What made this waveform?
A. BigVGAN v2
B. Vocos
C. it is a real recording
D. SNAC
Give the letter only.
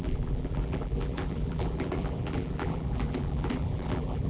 A